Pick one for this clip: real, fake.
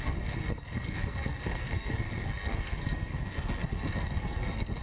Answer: fake